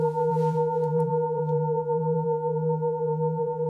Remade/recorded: remade